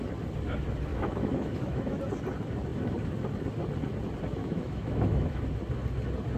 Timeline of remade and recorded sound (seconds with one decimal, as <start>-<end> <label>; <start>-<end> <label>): 0.0-0.9 recorded; 0.9-2.0 remade; 2.0-4.4 recorded; 4.4-5.4 remade; 5.4-6.4 recorded